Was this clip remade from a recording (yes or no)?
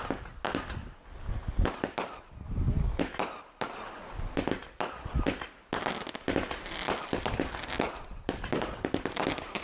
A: no